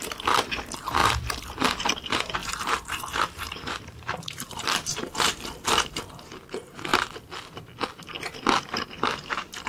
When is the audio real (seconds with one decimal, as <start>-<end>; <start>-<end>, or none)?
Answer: 6.9-8.6